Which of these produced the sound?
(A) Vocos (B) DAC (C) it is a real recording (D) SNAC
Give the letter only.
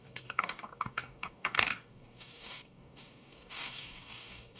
B